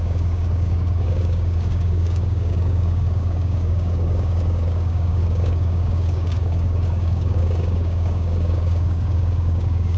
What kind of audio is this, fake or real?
fake